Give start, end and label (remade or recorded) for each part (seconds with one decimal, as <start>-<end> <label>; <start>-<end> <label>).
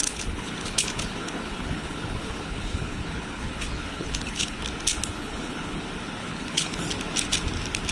0.0-4.6 remade; 4.6-5.2 recorded; 5.2-5.8 remade; 5.8-6.2 recorded; 6.2-6.8 remade; 6.8-7.9 recorded